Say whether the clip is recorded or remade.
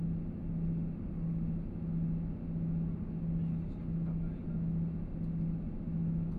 recorded